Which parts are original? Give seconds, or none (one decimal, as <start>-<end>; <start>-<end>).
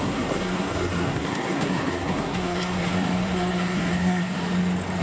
4.4-5.0